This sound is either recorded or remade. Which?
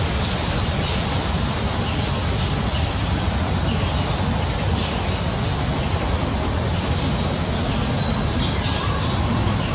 recorded